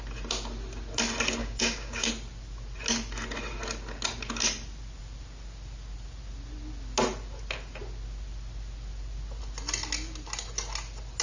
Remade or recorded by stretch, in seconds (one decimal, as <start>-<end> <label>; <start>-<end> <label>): 0.0-1.4 recorded; 1.4-2.1 remade; 2.1-11.2 recorded